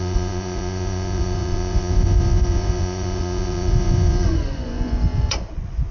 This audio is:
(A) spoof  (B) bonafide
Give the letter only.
A